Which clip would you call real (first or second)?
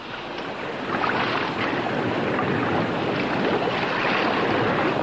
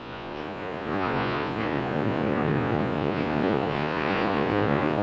first